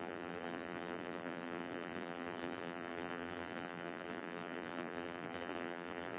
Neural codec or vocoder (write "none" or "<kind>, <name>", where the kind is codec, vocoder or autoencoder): vocoder, BigVGAN v2